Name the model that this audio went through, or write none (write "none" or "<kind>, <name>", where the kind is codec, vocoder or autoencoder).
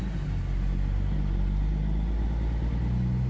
none